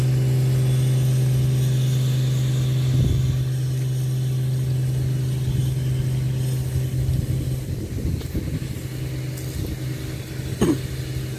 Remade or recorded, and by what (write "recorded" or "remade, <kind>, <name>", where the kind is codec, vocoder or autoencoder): recorded